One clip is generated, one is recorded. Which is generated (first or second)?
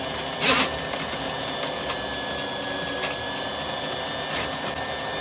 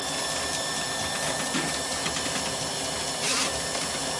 second